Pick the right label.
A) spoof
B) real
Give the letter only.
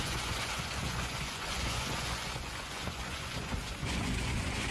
A